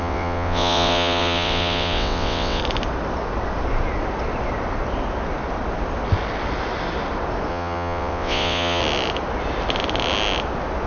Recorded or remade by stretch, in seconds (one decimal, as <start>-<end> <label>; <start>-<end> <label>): 0.0-2.6 remade; 2.6-7.5 recorded; 7.5-8.8 remade; 8.8-10.9 recorded